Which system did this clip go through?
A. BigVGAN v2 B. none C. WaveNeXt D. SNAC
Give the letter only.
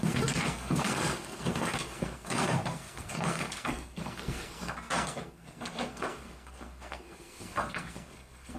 D